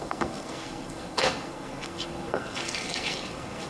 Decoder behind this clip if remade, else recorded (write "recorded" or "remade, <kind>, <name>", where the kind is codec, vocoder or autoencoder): remade, codec, SNAC